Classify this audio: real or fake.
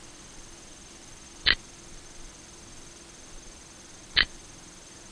real